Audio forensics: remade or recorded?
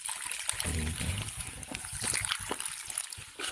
recorded